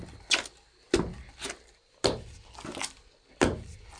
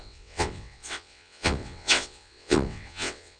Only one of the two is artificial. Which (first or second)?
second